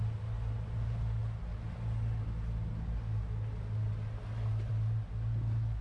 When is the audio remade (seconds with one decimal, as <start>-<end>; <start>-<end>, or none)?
none